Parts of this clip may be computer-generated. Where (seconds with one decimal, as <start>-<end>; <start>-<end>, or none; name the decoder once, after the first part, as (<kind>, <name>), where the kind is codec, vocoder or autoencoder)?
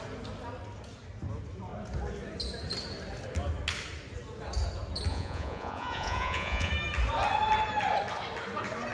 5.1-6.7 (vocoder, Vocos)